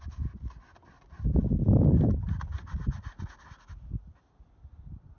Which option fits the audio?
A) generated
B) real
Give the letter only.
B